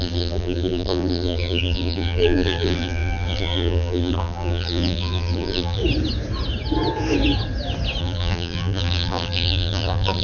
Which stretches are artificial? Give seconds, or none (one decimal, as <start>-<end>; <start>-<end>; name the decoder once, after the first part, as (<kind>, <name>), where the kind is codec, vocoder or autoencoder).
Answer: 0.0-5.8 (vocoder, BigVGAN v2); 8.0-10.2

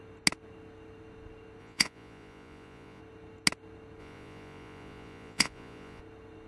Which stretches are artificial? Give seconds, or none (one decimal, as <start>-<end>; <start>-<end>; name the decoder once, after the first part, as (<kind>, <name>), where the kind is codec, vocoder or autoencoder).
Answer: 1.6-3.0 (vocoder, Vocos); 4.0-6.0

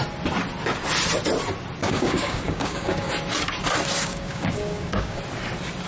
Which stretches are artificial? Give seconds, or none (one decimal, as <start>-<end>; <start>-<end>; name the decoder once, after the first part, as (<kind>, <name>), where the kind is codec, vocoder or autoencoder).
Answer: 1.8-3.1 (codec, DAC); 4.0-5.2